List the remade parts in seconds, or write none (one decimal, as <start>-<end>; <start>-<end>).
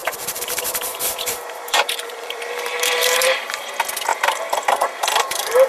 0.0-3.4; 4.1-5.7